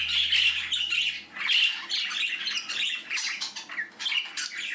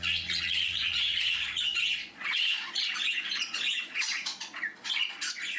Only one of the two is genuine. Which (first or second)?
first